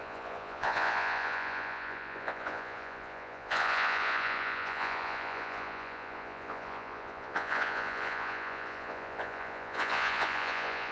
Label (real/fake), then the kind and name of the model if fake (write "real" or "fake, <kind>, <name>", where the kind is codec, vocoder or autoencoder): fake, vocoder, Vocos